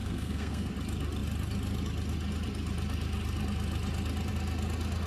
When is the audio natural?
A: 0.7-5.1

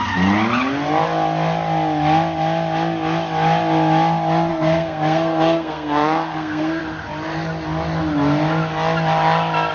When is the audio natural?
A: 0.0-4.5; 6.8-9.7

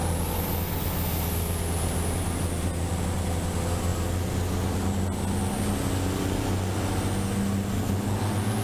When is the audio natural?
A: 0.0-8.6

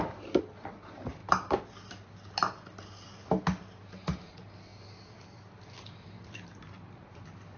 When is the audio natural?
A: 0.0-7.6